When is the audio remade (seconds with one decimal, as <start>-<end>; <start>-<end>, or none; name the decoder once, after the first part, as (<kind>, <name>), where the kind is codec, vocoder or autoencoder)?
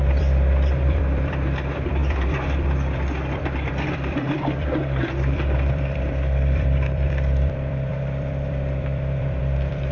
0.0-9.9 (vocoder, BigVGAN v2)